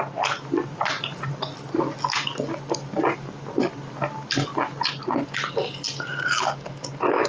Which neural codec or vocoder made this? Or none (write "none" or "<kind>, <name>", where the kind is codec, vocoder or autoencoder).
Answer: none